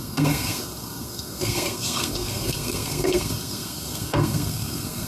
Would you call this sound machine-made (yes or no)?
yes